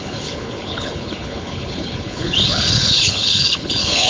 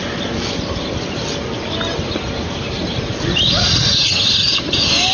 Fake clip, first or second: first